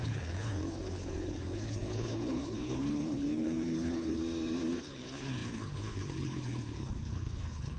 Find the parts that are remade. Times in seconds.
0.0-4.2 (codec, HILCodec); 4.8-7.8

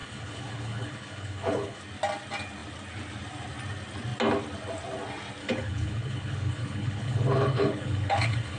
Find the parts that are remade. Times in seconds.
0.0-1.8 (codec, HILCodec); 5.4-8.6

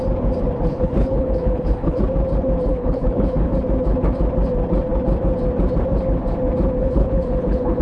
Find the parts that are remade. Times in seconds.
0.7-2.0 (codec, HILCodec); 2.7-3.5; 6.8-7.8